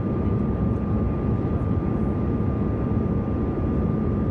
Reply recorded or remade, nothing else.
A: recorded